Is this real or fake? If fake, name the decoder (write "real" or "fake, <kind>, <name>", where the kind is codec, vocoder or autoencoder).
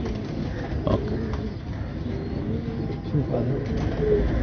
real